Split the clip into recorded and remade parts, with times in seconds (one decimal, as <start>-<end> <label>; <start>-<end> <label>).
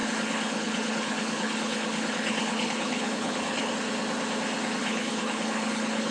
0.0-3.7 remade; 3.7-4.8 recorded; 4.8-6.1 remade